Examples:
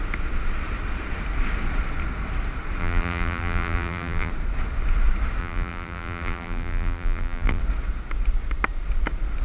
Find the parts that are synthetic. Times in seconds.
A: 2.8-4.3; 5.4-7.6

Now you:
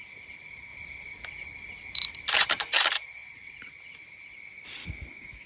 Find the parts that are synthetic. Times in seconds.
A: 4.8-5.5

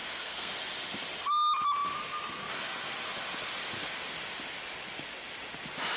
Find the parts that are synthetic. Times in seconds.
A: 0.0-0.5

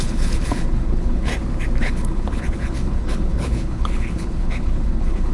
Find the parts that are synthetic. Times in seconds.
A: 0.0-1.3; 1.8-5.3

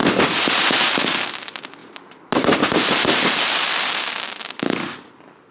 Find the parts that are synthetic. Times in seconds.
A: none

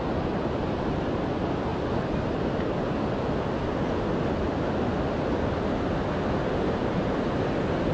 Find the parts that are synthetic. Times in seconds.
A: none

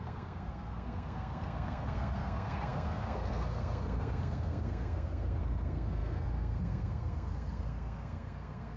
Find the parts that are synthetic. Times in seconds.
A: 0.0-8.8

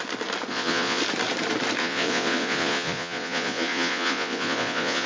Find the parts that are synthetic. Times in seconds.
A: 0.5-1.0; 1.8-5.1